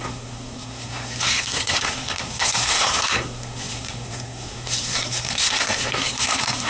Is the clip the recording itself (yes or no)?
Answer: no